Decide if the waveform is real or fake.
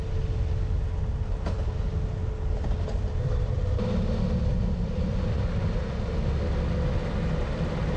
real